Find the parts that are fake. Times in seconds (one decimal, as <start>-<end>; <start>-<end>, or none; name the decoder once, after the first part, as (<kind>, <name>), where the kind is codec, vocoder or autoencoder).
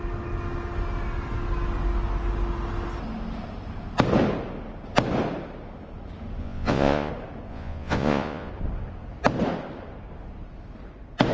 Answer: 6.4-7.1 (vocoder, Vocos); 7.5-8.5